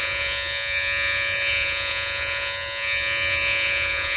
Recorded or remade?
remade